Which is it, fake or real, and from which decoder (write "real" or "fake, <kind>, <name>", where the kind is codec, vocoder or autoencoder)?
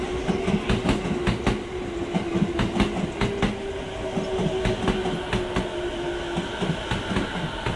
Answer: real